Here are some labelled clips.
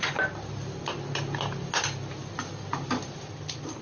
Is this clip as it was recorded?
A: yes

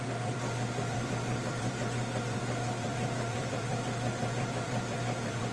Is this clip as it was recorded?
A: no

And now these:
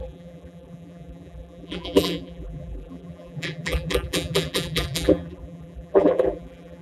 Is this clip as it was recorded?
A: no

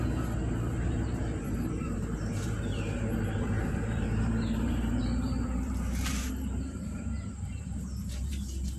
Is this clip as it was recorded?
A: no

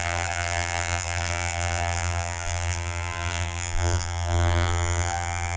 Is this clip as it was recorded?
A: no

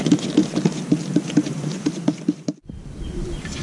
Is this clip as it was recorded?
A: no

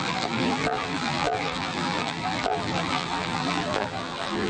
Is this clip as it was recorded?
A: no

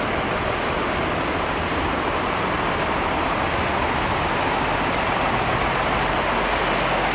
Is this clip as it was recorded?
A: yes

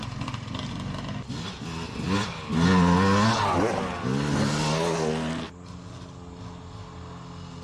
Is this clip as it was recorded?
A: yes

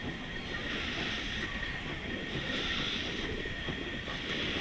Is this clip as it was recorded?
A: no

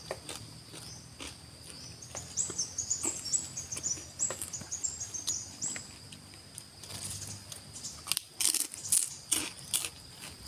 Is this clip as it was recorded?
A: yes